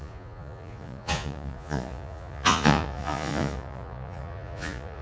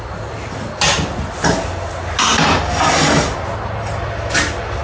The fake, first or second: first